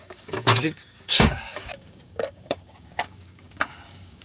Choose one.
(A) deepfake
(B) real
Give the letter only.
A